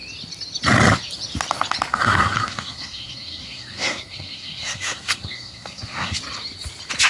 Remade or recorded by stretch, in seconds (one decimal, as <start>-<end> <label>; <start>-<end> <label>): 0.0-1.9 recorded; 1.9-6.2 remade; 6.2-7.1 recorded